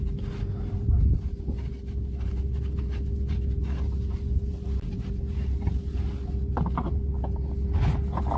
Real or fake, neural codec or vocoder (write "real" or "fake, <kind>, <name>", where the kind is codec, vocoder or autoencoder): real